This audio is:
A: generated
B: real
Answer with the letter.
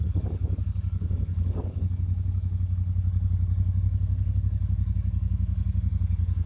A